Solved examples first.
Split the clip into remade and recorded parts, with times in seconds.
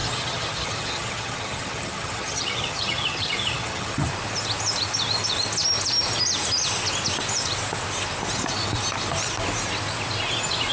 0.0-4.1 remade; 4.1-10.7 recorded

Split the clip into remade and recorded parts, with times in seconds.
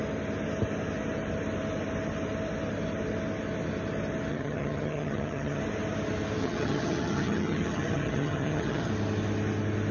0.0-4.3 recorded; 4.3-5.6 remade; 5.6-6.4 recorded; 6.4-8.9 remade; 8.9-9.9 recorded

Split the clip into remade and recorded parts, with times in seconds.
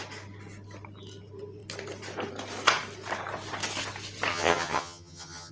0.0-4.3 recorded; 4.3-5.5 remade